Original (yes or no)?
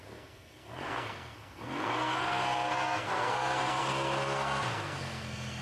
no